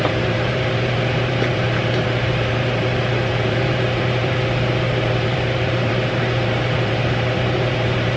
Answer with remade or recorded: remade